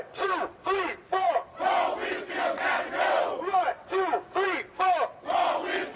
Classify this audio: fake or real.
fake